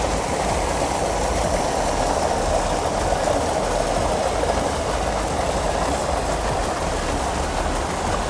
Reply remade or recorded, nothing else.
recorded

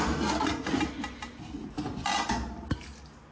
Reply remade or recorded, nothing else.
recorded